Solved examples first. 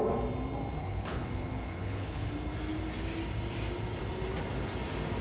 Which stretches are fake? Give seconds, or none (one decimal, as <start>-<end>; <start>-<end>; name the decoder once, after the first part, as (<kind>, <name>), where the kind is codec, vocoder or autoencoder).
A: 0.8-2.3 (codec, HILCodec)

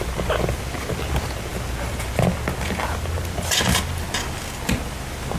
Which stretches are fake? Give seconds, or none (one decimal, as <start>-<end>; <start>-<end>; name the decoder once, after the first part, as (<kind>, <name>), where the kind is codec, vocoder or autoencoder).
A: none

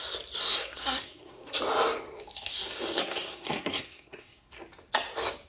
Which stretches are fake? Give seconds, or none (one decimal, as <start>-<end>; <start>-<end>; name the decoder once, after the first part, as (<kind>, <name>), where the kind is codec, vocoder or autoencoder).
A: 0.4-1.6 (codec, SNAC); 3.0-4.5

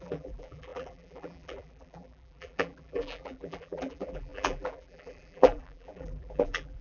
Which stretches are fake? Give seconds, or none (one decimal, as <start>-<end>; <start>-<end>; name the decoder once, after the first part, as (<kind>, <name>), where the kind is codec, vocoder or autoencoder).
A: 0.0-6.8 (vocoder, BigVGAN v2)

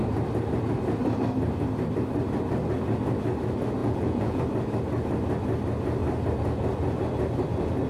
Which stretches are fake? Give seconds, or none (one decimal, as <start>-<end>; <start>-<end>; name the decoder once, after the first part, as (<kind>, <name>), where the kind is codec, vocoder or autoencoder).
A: 3.8-4.4 (vocoder, Vocos)

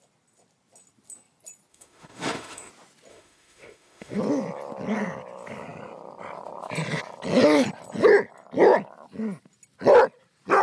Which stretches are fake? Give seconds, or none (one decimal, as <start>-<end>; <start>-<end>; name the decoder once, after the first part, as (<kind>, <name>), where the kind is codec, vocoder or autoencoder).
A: 1.7-2.7 (autoencoder, DAC-VAE); 3.1-4.2

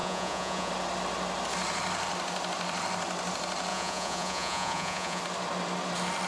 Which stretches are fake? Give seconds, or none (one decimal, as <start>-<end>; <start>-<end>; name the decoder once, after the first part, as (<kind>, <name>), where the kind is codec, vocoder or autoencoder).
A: 0.0-0.7 (vocoder, Vocos); 3.7-5.2